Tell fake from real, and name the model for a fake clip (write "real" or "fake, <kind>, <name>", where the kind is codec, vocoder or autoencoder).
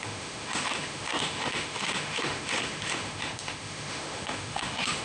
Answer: fake, autoencoder, DAC-VAE